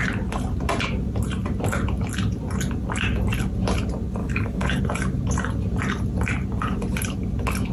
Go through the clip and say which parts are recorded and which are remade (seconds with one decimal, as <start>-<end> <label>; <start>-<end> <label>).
0.0-4.2 recorded; 4.2-4.8 remade; 4.8-7.7 recorded

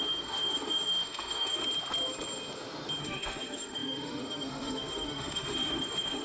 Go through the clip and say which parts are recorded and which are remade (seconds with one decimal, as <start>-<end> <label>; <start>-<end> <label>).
0.0-1.6 remade; 1.6-3.0 recorded; 3.0-6.2 remade

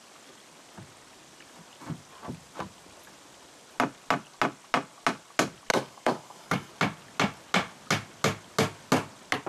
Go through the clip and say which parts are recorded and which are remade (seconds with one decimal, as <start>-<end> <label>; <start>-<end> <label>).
0.0-5.7 recorded; 5.7-6.7 remade; 6.7-9.5 recorded

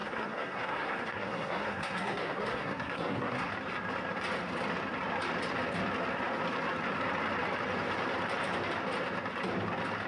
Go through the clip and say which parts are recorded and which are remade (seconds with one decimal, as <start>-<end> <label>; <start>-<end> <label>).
0.0-3.5 remade; 3.5-10.1 recorded